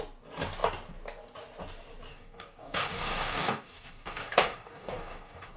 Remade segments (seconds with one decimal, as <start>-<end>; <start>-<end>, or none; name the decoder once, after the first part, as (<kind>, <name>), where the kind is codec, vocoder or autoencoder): 2.1-5.6 (codec, DAC)